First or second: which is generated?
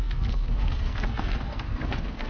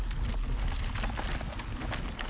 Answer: first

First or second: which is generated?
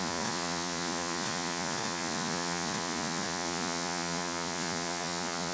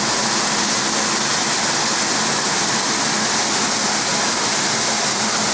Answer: first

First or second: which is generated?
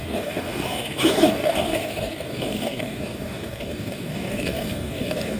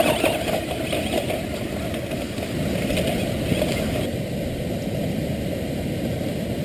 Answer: first